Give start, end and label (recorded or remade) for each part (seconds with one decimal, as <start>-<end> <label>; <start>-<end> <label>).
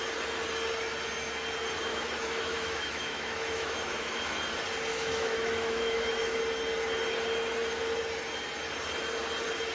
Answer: 0.0-1.9 recorded; 1.9-4.4 remade; 4.4-4.9 recorded; 4.9-6.4 remade; 6.4-9.7 recorded